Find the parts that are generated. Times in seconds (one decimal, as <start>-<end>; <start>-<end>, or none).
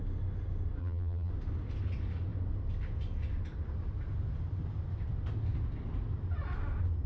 0.8-1.3